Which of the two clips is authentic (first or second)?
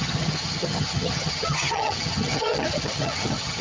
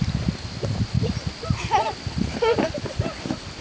second